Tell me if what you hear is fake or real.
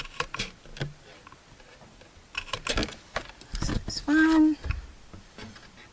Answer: real